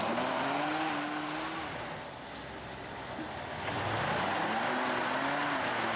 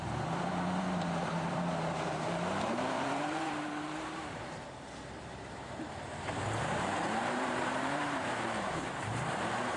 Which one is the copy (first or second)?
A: second